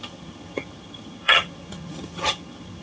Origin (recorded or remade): remade